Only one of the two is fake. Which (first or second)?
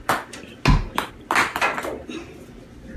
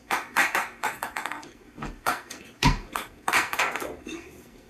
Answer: second